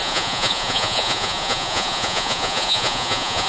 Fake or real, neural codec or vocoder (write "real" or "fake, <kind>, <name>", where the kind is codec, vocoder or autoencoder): fake, vocoder, Vocos